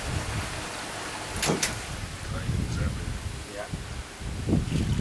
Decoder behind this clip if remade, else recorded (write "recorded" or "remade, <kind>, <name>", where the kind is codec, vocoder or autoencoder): recorded